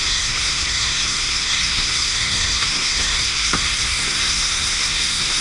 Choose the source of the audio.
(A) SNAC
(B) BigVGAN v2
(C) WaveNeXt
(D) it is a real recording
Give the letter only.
A